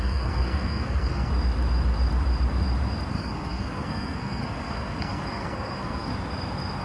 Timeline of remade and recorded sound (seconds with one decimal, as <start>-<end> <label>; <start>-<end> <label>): 0.0-1.3 remade; 1.3-3.1 recorded; 3.1-6.1 remade; 6.1-6.8 recorded